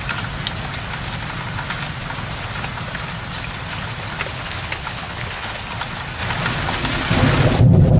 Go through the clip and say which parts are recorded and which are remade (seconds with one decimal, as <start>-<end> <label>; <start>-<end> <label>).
0.0-4.4 recorded; 4.4-5.6 remade; 5.6-8.0 recorded